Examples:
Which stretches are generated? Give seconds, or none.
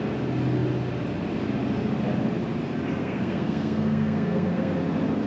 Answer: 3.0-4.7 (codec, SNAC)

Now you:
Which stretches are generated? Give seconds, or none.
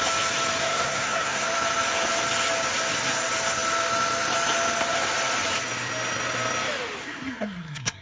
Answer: 0.6-1.5 (codec, SNAC); 7.0-8.0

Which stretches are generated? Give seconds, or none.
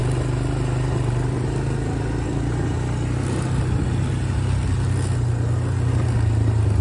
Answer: none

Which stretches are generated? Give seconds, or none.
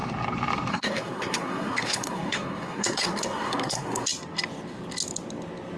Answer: 0.7-4.1 (codec, SNAC)